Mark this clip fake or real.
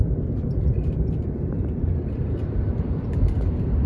fake